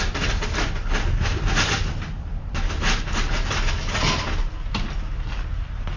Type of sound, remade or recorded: recorded